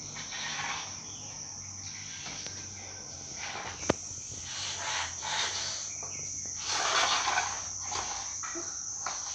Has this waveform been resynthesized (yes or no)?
no